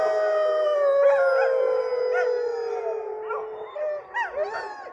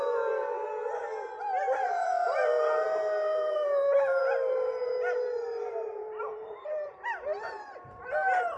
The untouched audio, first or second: first